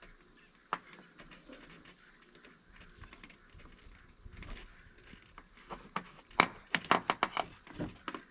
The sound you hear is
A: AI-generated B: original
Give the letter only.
B